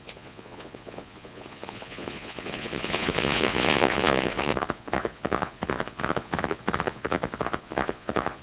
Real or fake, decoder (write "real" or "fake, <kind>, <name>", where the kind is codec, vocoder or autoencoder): fake, vocoder, Vocos